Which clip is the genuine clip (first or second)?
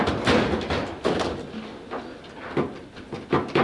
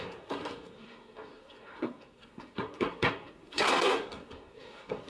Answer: first